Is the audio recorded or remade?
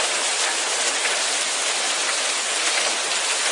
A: recorded